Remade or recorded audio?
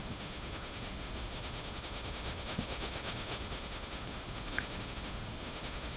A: remade